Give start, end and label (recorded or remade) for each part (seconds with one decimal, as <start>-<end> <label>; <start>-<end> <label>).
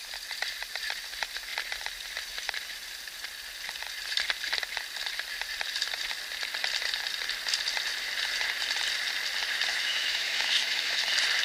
0.0-9.7 recorded; 9.7-11.0 remade; 11.0-11.4 recorded